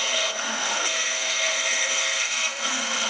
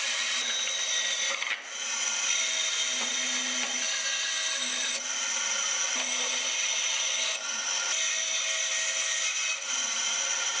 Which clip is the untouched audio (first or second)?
second